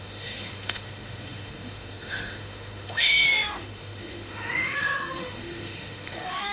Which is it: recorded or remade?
remade